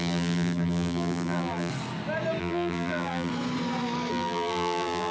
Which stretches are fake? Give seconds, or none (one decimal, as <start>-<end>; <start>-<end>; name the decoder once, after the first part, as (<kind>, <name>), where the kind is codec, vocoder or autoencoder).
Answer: 0.0-1.7 (vocoder, BigVGAN v2); 2.4-3.3; 4.1-5.1

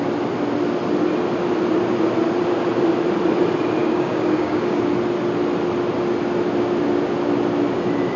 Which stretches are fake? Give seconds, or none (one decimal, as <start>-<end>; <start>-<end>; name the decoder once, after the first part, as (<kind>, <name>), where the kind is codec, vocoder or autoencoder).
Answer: 3.8-4.8 (codec, DAC)

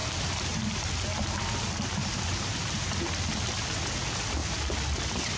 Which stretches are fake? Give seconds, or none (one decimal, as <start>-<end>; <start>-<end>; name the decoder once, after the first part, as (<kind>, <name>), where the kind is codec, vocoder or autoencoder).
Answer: 2.0-3.0 (vocoder, BigVGAN v2)

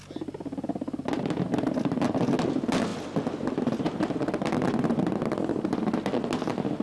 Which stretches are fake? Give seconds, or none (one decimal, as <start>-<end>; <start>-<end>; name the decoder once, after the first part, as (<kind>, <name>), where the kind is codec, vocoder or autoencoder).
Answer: none

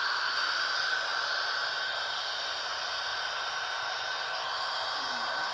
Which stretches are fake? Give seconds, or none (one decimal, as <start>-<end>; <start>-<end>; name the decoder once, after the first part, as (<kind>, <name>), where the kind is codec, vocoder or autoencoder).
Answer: none

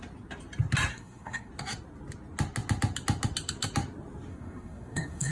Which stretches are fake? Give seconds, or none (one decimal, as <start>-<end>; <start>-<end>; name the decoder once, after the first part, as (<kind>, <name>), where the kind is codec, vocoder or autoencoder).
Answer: 0.9-1.5 (codec, SNAC); 4.3-5.3